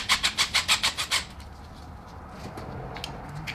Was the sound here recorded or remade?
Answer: recorded